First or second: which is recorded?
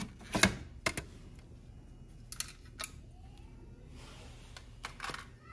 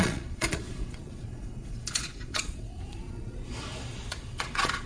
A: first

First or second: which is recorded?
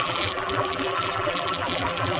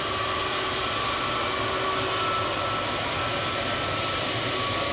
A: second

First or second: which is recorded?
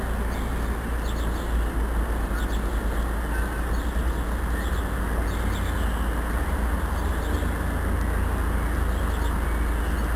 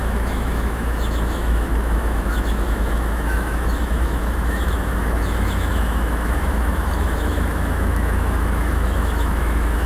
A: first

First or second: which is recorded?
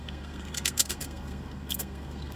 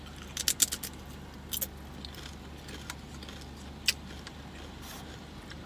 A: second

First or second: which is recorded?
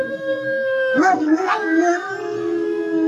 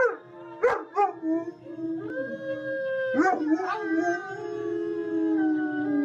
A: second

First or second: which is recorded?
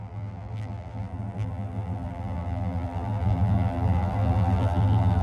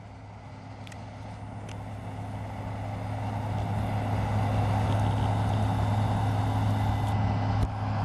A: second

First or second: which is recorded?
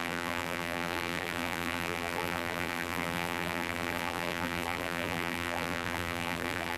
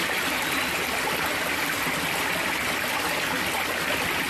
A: second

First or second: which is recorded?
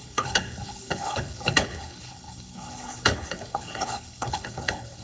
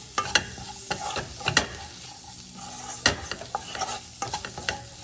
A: second